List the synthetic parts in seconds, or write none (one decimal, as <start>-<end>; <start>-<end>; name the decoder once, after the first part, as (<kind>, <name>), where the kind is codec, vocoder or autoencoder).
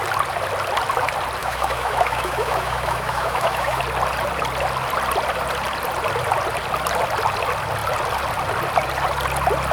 1.4-3.8 (autoencoder, DAC-VAE)